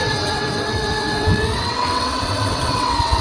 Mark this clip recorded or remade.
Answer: remade